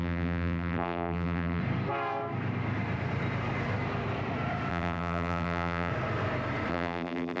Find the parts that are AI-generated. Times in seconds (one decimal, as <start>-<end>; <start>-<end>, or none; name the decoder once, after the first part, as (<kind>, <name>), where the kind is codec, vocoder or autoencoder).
0.0-1.6 (vocoder, BigVGAN v2); 4.7-5.9; 6.7-7.4